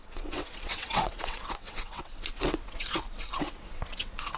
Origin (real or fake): fake